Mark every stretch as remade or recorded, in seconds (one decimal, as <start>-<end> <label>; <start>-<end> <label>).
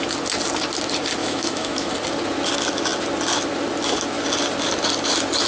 0.0-1.2 recorded; 1.2-1.9 remade; 1.9-5.5 recorded